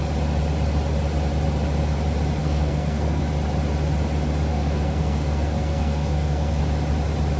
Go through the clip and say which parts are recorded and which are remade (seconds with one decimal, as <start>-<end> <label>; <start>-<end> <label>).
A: 0.0-2.4 recorded; 2.4-3.2 remade; 3.2-4.5 recorded; 4.5-6.6 remade; 6.6-7.4 recorded